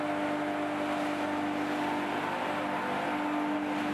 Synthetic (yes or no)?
no